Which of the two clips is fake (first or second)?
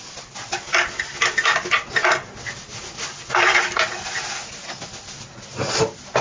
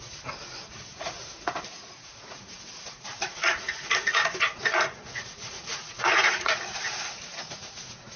second